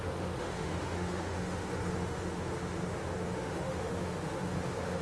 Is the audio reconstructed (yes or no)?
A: yes